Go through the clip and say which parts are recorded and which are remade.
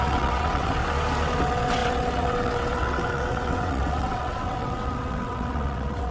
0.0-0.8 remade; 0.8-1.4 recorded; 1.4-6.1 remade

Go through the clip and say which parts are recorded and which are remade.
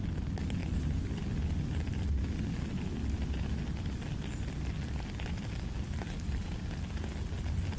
0.0-7.8 recorded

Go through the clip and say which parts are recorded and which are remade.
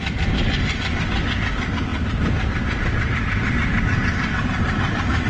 0.0-1.9 recorded; 1.9-5.3 remade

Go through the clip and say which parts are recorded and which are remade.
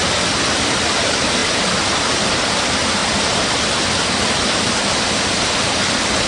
0.0-6.3 recorded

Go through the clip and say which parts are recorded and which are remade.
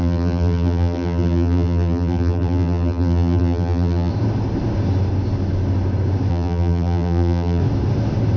0.0-4.1 remade; 4.1-6.3 recorded; 6.3-7.6 remade; 7.6-8.4 recorded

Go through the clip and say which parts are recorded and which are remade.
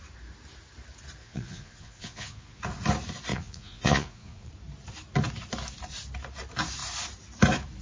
0.0-1.2 recorded; 1.2-2.6 remade; 2.6-3.3 recorded; 3.3-4.5 remade; 4.5-7.8 recorded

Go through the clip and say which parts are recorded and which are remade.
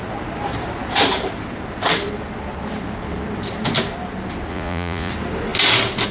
0.0-4.5 recorded; 4.5-5.1 remade; 5.1-6.1 recorded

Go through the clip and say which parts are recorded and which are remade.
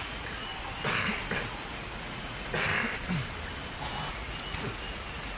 0.0-0.5 remade; 0.5-1.4 recorded; 1.4-2.7 remade; 2.7-4.1 recorded; 4.1-5.4 remade